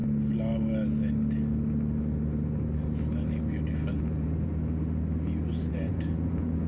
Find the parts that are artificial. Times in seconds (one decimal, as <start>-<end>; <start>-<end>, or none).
4.0-4.5; 5.7-6.7